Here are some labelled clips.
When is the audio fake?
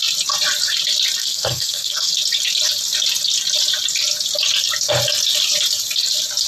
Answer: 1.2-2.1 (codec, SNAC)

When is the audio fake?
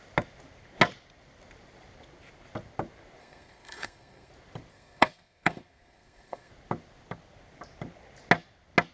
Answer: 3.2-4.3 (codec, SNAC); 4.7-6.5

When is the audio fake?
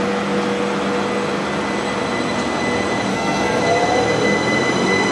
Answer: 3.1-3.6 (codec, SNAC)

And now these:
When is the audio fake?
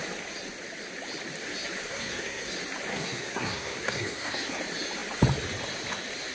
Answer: 1.9-2.5 (codec, SNAC); 2.9-4.6